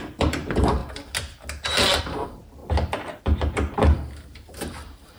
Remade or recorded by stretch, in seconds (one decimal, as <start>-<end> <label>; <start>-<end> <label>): 0.0-0.8 remade; 0.8-2.0 recorded; 2.0-2.6 remade; 2.6-3.2 recorded; 3.2-5.2 remade